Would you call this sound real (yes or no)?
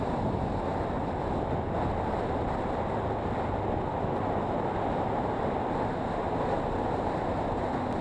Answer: yes